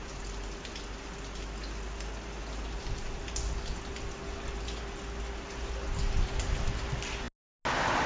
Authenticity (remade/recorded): recorded